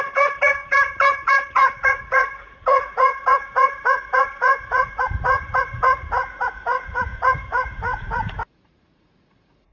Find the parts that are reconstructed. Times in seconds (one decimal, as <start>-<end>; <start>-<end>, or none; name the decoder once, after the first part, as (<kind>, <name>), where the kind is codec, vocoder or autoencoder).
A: 0.0-9.7 (vocoder, Vocos)